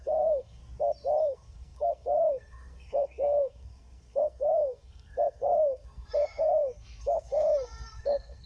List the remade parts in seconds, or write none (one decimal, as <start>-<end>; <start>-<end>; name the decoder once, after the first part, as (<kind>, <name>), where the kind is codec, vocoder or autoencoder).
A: 0.0-0.6 (codec, SNAC); 1.2-8.5